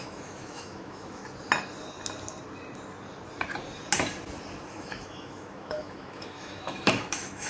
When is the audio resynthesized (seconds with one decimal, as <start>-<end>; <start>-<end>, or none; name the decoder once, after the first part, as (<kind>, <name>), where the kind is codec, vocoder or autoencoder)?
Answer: 0.0-1.2 (autoencoder, DAC-VAE); 4.7-7.5